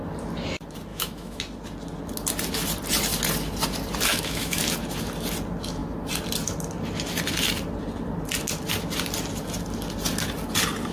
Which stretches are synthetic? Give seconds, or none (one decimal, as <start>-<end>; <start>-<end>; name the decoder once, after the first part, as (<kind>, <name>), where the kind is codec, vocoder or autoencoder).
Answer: 0.9-1.4 (autoencoder, DAC-VAE); 4.1-4.6